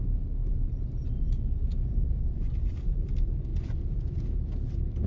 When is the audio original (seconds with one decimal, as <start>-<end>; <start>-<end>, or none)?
0.0-1.7; 2.7-3.5; 4.3-5.1